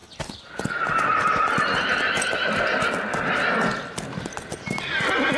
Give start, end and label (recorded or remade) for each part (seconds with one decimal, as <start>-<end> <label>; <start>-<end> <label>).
0.0-5.4 recorded